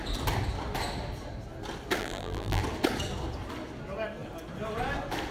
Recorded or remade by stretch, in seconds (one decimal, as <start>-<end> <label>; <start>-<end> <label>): 0.0-2.0 recorded; 2.0-2.6 remade; 2.6-5.3 recorded